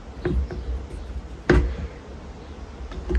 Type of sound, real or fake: real